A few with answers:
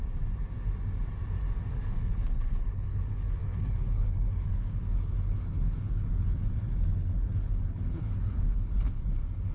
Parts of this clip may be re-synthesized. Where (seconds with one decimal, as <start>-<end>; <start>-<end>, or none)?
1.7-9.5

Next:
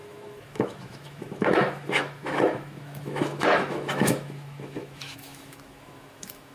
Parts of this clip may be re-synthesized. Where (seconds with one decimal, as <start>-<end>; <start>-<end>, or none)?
0.0-6.5

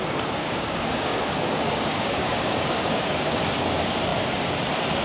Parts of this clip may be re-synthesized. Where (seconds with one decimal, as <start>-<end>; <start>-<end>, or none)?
0.4-3.4

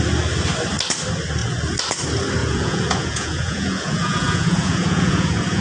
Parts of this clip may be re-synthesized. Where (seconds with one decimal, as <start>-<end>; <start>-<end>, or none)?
2.4-5.6

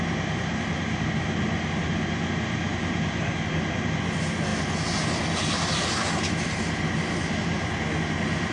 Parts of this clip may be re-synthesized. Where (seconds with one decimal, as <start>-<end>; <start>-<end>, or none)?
2.7-3.4

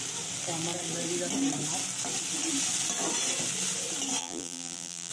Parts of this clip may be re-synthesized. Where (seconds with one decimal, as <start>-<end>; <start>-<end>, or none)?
4.2-5.1

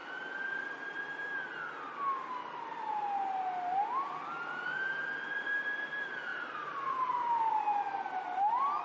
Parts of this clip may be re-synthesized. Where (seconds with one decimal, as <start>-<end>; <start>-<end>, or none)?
0.0-1.3; 6.3-7.5